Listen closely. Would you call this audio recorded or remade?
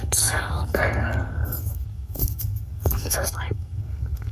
remade